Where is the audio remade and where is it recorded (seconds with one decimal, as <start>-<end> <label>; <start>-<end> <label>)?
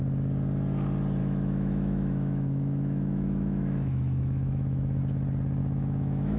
0.0-1.2 recorded; 1.2-5.0 remade; 5.0-5.6 recorded; 5.6-6.4 remade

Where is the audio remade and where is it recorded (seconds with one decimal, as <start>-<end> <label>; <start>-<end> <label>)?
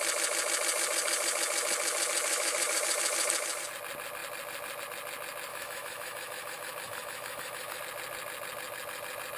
0.0-2.3 recorded; 2.3-2.8 remade; 2.8-5.5 recorded; 5.5-7.8 remade; 7.8-9.4 recorded